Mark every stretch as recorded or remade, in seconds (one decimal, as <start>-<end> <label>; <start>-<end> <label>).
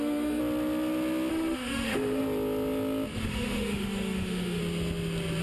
0.0-0.4 remade; 0.4-1.3 recorded; 1.3-2.2 remade; 2.2-3.2 recorded; 3.2-4.6 remade; 4.6-5.4 recorded